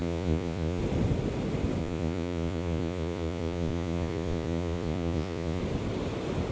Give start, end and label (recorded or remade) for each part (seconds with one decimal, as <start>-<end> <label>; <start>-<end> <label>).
0.0-0.8 remade; 0.8-1.8 recorded; 1.8-5.6 remade; 5.6-6.5 recorded